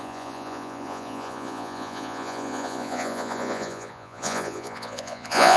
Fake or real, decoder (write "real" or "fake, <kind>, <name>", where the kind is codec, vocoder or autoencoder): fake, vocoder, Vocos